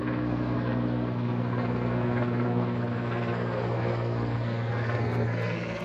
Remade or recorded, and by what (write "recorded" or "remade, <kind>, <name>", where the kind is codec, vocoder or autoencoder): remade, codec, SNAC